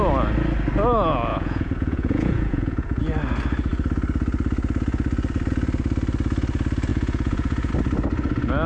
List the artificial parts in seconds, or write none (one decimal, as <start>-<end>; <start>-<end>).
1.3-3.0; 6.9-7.7